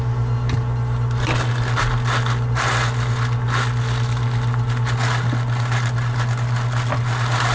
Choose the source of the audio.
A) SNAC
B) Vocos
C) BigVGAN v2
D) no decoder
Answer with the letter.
D